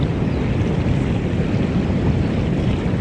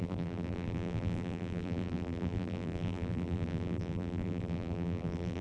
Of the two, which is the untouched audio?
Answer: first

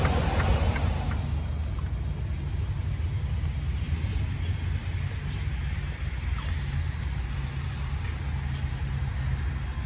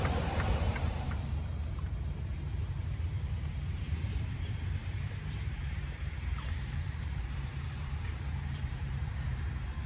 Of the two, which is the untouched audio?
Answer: first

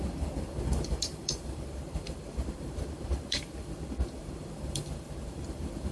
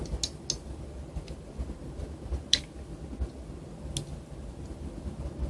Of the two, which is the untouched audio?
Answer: second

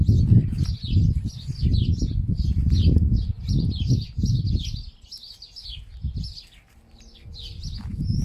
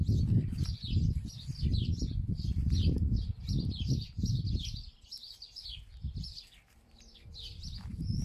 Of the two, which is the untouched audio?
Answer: first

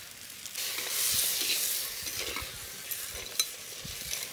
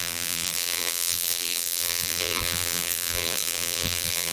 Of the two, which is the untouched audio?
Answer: first